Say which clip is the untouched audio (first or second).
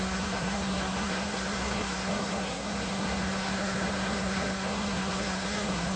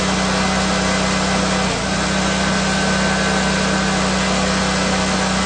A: second